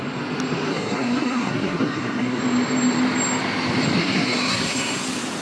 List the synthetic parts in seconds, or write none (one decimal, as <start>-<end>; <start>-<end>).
0.7-2.4; 4.0-5.0